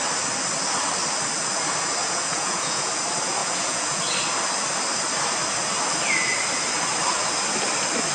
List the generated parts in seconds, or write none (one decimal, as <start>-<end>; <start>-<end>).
2.0-2.9; 3.4-4.0